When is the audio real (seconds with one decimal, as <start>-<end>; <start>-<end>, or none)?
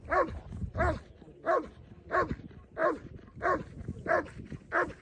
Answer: 0.0-2.8; 3.4-5.0